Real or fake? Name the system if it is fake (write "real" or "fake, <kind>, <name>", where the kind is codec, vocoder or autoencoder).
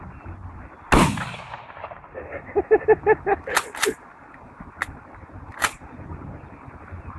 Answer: real